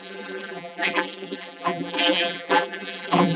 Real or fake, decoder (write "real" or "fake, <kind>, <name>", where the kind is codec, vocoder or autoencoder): fake, vocoder, BigVGAN v2